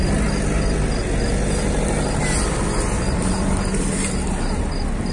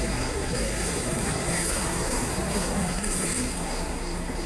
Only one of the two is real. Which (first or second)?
first